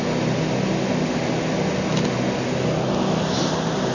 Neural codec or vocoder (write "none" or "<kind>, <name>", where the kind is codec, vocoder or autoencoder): none